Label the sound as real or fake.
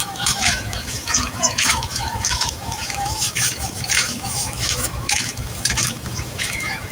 fake